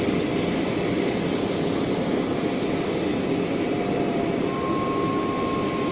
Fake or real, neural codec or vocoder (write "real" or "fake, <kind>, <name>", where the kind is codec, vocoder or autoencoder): real